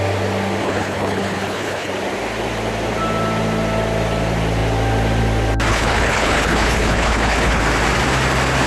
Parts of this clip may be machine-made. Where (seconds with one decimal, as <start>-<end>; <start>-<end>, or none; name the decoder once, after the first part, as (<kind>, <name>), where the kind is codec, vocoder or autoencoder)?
0.6-1.9 (codec, HILCodec); 5.7-7.6